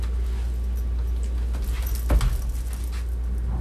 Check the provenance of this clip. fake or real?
real